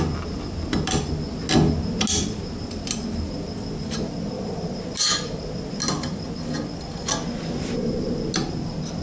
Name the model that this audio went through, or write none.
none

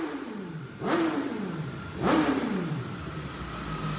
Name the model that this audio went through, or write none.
vocoder, BigVGAN v2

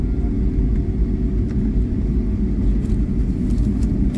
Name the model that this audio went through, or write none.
none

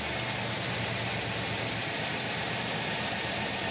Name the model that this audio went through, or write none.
none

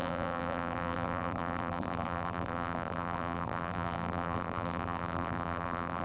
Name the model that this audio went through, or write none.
vocoder, BigVGAN v2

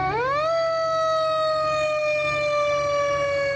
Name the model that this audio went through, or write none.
none